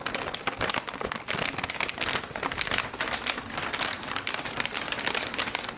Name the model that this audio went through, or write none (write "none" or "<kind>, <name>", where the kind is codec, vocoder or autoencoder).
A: none